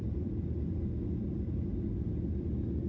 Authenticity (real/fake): real